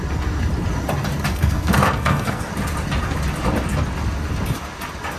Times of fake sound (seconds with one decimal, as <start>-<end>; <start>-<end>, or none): 1.3-2.5